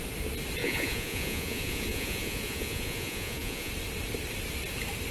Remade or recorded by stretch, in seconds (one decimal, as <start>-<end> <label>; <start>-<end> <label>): 0.0-0.6 recorded; 0.6-3.7 remade; 3.7-5.1 recorded